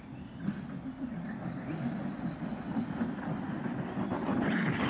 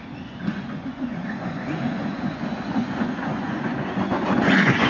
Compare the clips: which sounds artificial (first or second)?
second